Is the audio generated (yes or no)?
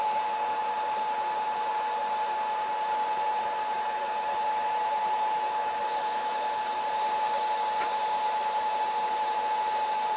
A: yes